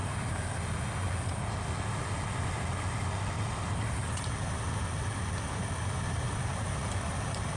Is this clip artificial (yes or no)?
yes